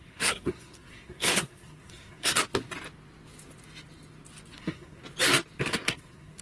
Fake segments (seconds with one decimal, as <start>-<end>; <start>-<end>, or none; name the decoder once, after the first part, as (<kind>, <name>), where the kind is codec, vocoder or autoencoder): 0.0-2.4 (codec, SNAC); 4.5-5.0; 5.7-6.4